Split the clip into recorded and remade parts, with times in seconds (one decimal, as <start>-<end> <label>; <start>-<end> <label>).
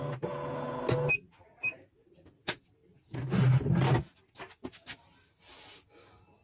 0.0-6.4 recorded